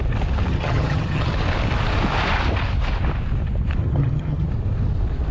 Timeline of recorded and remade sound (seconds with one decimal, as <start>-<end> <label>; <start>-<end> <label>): 0.0-0.5 recorded; 0.5-1.3 remade; 1.3-3.8 recorded; 3.8-4.5 remade; 4.5-5.3 recorded